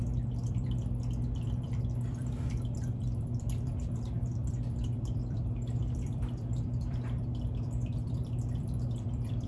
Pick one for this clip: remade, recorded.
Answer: remade